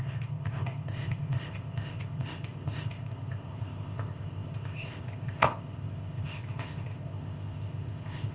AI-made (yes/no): yes